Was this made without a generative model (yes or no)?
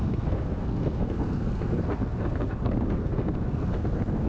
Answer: no